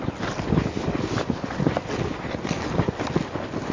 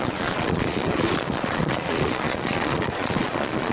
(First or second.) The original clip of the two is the first